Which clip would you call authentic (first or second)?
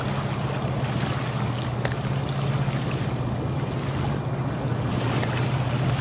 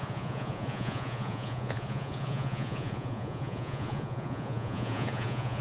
first